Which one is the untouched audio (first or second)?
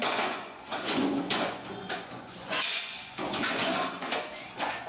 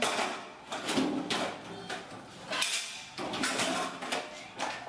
second